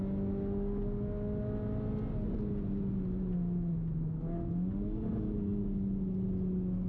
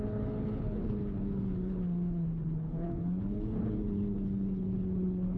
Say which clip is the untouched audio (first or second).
first